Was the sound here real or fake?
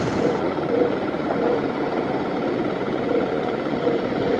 fake